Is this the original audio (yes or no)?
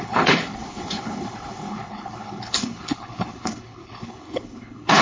no